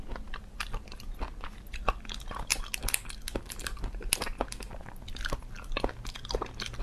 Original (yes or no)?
yes